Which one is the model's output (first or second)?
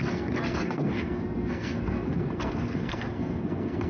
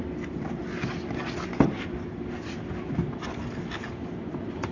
first